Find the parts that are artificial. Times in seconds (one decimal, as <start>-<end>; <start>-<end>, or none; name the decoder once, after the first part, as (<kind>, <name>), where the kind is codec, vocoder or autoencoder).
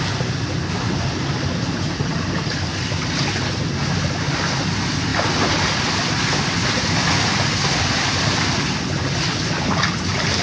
none